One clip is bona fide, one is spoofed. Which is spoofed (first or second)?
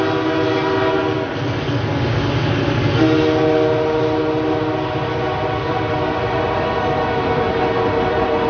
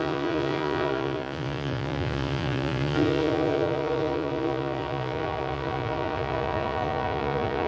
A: second